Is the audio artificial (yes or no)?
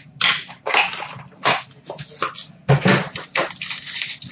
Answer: no